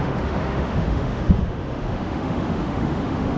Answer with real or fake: fake